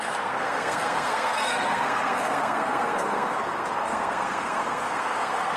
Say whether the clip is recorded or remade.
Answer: remade